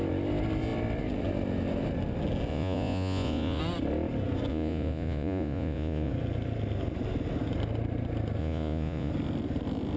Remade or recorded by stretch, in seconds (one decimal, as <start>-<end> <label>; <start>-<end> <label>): 0.0-2.5 recorded; 2.5-3.6 remade; 3.6-4.5 recorded; 4.5-6.1 remade; 6.1-8.4 recorded; 8.4-9.1 remade; 9.1-10.0 recorded